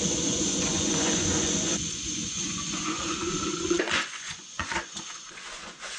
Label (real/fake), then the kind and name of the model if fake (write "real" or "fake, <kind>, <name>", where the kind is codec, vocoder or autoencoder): fake, vocoder, Vocos